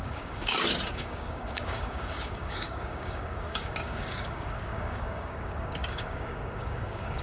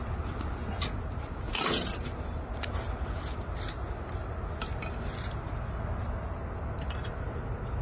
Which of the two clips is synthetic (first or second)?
first